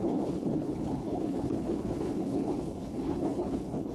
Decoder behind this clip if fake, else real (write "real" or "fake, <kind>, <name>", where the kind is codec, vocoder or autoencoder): fake, codec, HILCodec